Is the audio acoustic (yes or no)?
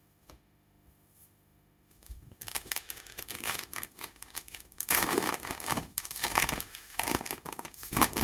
no